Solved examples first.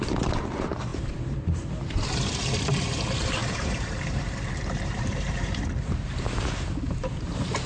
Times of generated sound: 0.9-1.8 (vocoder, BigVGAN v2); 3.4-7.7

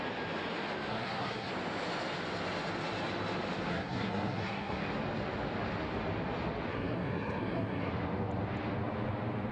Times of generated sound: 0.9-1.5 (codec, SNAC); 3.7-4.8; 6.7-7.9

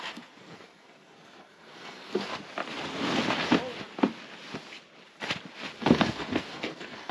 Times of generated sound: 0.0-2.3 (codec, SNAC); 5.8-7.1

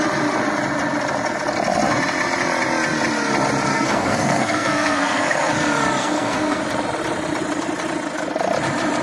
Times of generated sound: 3.7-5.5 (codec, SNAC); 6.0-6.6

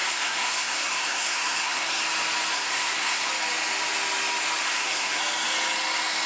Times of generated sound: 0.0-2.0 (codec, SNAC); 2.5-3.3; 4.6-5.2

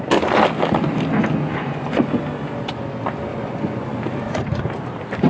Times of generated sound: 1.4-2.0 (vocoder, Vocos); 3.3-4.0

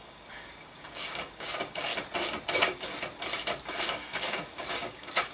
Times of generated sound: 0.0-1.9 (codec, DAC); 2.5-2.9; 3.7-5.3